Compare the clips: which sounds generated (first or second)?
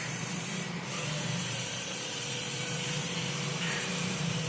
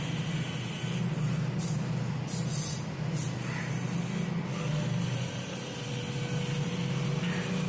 first